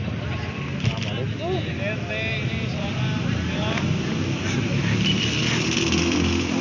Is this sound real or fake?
real